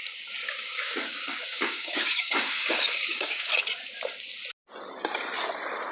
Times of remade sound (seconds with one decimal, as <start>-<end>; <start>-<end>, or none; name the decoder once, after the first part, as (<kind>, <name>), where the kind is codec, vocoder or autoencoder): 0.4-3.5 (codec, DAC)